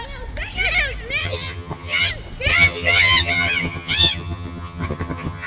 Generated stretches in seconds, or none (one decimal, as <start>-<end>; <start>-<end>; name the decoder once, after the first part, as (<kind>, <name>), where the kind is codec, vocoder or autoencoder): 1.2-2.1 (vocoder, HiFi-GAN); 2.5-5.5